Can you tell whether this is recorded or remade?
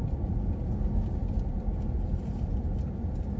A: recorded